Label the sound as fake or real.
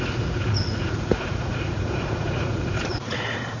fake